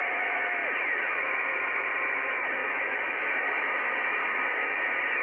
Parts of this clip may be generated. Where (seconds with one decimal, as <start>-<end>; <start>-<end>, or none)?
0.0-0.6; 2.0-5.2